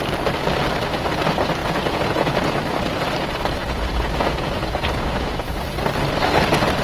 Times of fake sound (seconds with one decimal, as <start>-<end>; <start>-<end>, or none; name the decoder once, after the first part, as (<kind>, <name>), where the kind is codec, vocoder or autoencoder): 1.6-2.5 (vocoder, Vocos); 3.6-5.5